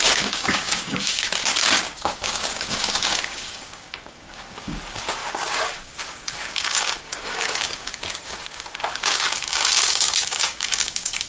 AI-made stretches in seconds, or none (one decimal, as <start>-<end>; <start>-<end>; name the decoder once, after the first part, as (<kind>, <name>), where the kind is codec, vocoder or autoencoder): 0.0-11.3 (codec, DAC)